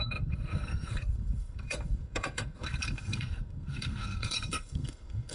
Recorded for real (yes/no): no